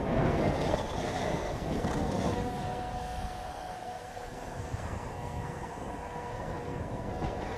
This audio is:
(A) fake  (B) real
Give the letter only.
A